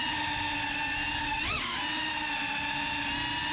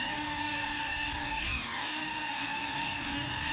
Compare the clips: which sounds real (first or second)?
first